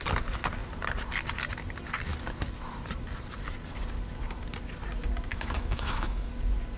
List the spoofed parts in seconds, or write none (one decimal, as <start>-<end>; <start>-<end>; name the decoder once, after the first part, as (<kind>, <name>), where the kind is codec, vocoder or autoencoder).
5.3-6.3 (autoencoder, DAC-VAE)